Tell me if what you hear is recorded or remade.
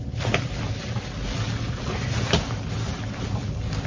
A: recorded